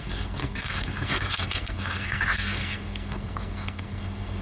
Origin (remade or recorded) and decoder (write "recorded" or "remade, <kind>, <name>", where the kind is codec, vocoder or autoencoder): remade, codec, SNAC